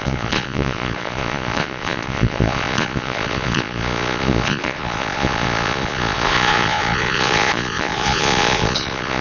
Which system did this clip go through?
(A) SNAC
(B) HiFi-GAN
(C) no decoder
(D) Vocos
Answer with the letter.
D